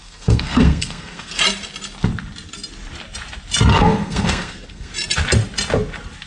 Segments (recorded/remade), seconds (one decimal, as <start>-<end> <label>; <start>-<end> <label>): 0.0-1.4 remade; 1.4-3.7 recorded; 3.7-4.9 remade; 4.9-6.3 recorded